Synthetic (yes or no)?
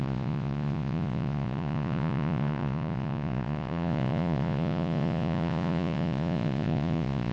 yes